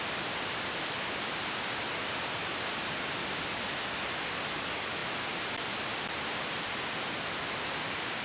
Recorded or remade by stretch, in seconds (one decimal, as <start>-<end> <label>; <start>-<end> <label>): 0.0-8.2 recorded